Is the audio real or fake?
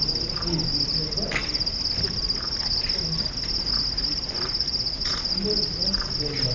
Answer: real